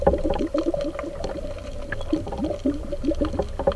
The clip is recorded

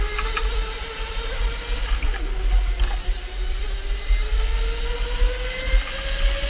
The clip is recorded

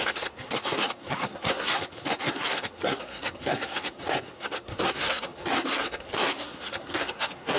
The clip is remade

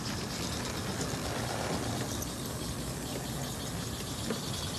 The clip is recorded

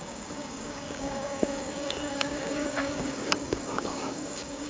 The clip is remade